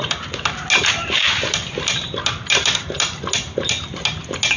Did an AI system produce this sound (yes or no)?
no